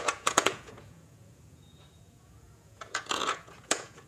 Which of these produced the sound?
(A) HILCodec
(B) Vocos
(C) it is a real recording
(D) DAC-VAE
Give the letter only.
B